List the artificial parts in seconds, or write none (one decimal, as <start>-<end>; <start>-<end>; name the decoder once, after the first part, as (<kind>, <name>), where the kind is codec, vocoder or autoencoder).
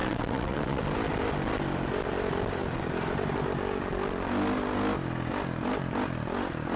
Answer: 0.0-0.8 (vocoder, WaveNeXt)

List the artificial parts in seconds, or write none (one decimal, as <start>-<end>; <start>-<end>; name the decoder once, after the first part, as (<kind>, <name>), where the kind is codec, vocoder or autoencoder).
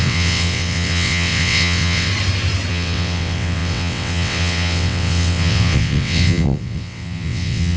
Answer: 0.0-2.1 (vocoder, WaveNeXt); 2.7-7.8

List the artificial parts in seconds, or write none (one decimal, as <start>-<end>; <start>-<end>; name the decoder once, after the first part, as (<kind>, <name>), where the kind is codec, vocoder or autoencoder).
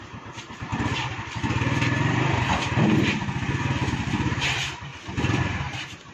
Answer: 0.0-0.7 (vocoder, BigVGAN v2); 3.9-4.9; 5.4-6.1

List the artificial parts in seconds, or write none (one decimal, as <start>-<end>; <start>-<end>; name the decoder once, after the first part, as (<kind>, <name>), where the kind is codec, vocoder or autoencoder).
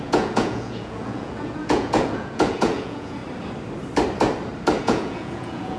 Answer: 0.0-3.2 (vocoder, Vocos); 4.8-5.8